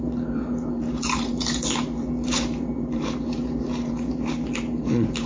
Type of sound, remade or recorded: remade